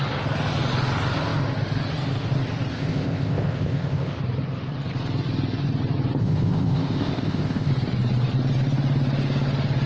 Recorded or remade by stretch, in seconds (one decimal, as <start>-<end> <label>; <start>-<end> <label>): 0.0-2.7 recorded; 2.7-4.2 remade; 4.2-6.2 recorded; 6.2-7.7 remade; 7.7-9.9 recorded